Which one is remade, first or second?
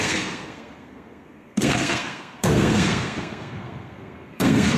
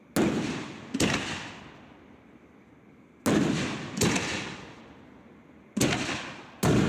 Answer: first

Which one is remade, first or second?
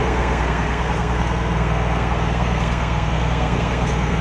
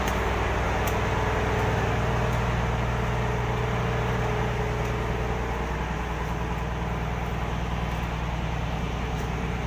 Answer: first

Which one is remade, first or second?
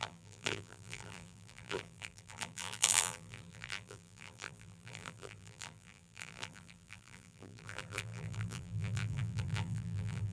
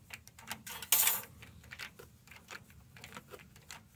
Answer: first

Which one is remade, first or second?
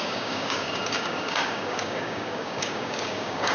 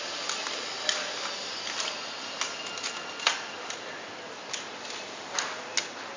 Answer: first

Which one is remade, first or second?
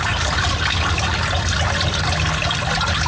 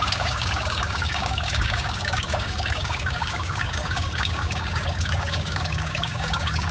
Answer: second